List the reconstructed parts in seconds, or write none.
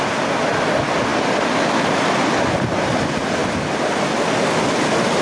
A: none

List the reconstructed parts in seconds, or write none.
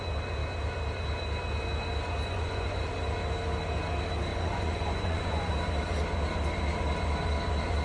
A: 2.3-2.9; 4.3-5.5